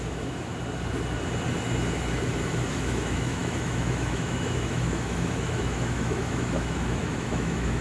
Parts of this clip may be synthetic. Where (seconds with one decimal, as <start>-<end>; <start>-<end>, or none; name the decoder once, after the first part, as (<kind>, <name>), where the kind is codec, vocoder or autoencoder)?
0.0-0.5 (autoencoder, DAC-VAE); 2.7-7.8